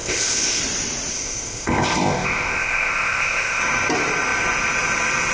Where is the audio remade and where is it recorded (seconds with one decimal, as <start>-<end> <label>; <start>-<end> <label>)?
0.0-0.6 remade; 0.6-1.1 recorded; 1.1-3.6 remade; 3.6-5.3 recorded